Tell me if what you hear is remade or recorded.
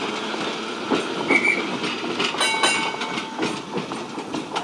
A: recorded